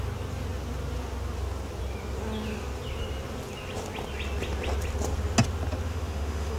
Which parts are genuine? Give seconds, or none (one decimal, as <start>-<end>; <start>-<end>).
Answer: 0.0-5.9